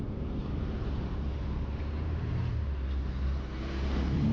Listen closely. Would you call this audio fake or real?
real